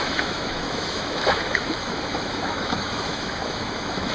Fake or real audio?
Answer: fake